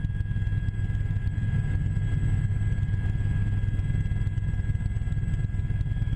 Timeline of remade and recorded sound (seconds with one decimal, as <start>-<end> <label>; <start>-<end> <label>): 0.0-6.2 recorded